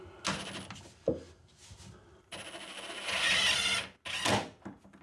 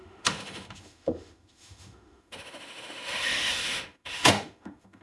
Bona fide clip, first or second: first